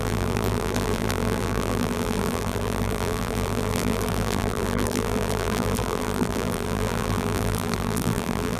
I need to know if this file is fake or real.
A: fake